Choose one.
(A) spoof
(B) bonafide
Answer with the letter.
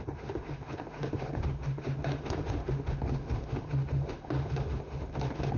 A